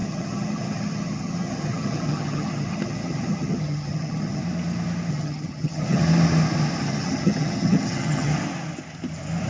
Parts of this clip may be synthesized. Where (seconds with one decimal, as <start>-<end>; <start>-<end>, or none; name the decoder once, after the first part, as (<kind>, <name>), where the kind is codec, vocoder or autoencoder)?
0.0-4.4 (vocoder, HiFi-GAN); 5.1-6.0; 6.8-8.3